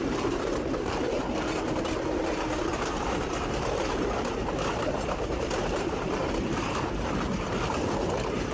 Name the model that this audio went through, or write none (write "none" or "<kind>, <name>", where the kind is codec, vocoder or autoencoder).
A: vocoder, BigVGAN v2